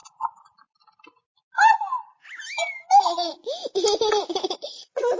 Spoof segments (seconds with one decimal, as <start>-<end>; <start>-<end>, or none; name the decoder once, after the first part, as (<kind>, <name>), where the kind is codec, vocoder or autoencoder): 3.0-3.4 (vocoder, Vocos); 4.1-5.2

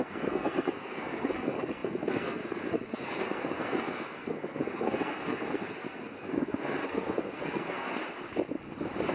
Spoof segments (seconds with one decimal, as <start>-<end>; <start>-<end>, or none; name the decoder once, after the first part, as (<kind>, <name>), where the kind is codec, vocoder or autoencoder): 0.0-8.0 (codec, SNAC)